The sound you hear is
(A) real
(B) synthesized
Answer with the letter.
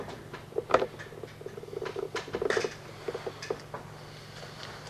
A